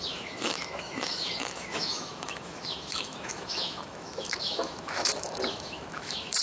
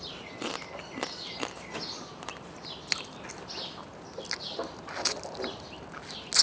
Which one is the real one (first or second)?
second